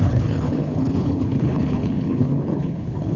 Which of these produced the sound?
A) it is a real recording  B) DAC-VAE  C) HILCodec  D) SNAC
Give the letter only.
C